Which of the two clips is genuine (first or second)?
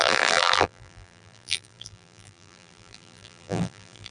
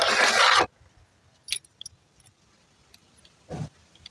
second